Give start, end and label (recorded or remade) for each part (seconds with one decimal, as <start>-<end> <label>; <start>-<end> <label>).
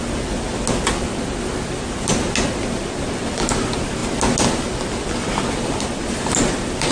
0.0-6.9 recorded